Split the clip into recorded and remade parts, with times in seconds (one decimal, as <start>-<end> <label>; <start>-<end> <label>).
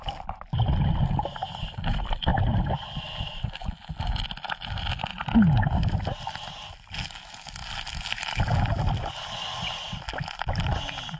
0.0-11.2 recorded